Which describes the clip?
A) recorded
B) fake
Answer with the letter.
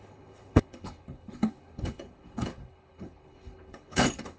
B